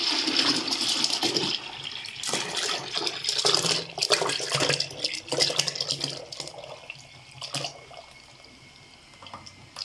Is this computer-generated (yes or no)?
no